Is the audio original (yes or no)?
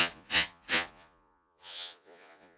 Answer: no